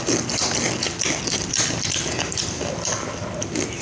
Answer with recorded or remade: remade